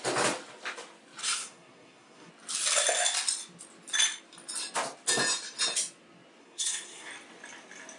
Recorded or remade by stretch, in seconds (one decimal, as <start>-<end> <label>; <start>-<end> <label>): 0.0-1.2 recorded; 1.2-2.3 remade; 2.3-6.4 recorded; 6.4-7.1 remade; 7.1-8.0 recorded